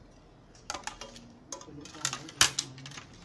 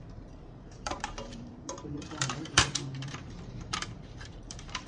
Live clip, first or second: first